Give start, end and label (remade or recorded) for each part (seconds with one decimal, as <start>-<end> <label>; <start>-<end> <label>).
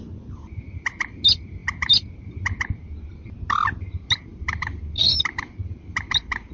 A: 0.0-6.5 recorded